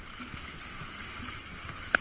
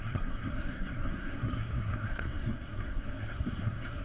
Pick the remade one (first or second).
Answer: second